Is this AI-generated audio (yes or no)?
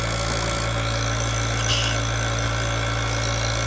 no